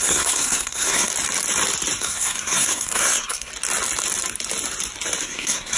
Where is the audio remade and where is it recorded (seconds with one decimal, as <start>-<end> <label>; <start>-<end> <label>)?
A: 0.0-1.1 remade; 1.1-2.0 recorded; 2.0-3.5 remade; 3.5-5.2 recorded; 5.2-5.8 remade